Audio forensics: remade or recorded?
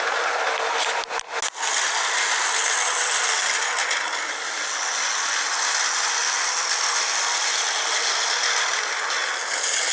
recorded